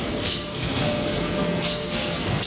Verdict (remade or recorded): remade